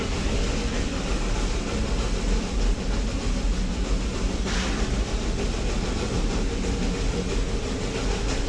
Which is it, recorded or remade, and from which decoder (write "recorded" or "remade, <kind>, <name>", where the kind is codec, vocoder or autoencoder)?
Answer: recorded